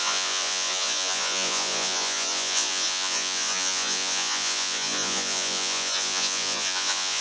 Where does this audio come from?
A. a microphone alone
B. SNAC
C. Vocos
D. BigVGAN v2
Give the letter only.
C